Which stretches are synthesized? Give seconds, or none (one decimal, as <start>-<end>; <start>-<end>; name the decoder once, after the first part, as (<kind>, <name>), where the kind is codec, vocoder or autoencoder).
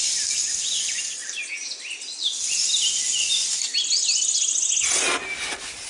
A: none